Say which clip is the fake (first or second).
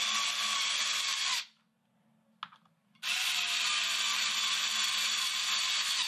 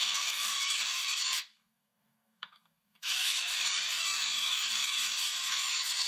second